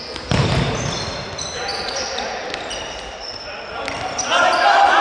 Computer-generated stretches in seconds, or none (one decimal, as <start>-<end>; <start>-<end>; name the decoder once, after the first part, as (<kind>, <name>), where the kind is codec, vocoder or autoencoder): 1.7-3.8 (vocoder, BigVGAN v2)